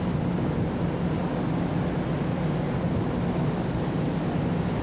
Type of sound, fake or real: real